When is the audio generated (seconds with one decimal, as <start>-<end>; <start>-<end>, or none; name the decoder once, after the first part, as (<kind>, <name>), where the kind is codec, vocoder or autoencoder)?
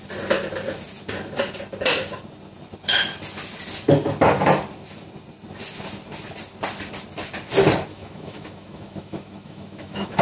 7.9-10.2 (autoencoder, DAC-VAE)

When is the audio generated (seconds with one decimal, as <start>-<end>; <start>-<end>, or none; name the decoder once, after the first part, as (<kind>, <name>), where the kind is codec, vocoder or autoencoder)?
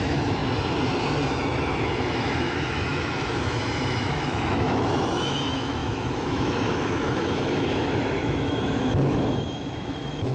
0.0-0.4 (autoencoder, DAC-VAE); 1.3-10.3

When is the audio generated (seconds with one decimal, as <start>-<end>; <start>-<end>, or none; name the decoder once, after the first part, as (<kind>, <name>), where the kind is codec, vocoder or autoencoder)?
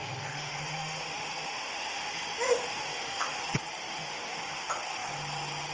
0.0-3.4 (autoencoder, DAC-VAE); 3.8-4.6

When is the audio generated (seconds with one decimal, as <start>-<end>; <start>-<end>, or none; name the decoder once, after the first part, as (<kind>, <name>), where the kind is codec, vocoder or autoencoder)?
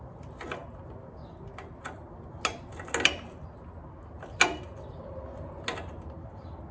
none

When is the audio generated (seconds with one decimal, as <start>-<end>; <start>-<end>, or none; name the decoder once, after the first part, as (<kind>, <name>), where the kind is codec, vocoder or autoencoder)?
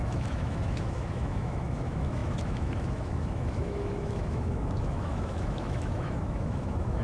0.0-7.0 (autoencoder, DAC-VAE)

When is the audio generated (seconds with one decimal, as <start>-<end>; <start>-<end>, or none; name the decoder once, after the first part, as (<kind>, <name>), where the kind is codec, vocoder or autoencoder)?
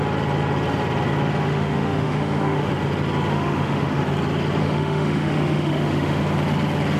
1.4-2.7 (autoencoder, DAC-VAE); 3.3-4.0; 4.6-6.2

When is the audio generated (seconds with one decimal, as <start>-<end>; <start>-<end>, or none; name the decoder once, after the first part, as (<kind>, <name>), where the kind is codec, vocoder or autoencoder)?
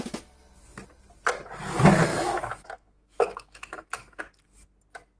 2.1-4.2 (autoencoder, DAC-VAE)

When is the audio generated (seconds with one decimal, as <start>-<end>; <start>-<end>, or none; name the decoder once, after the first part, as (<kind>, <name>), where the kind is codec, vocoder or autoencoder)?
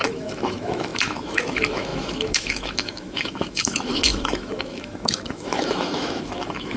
0.0-6.8 (autoencoder, DAC-VAE)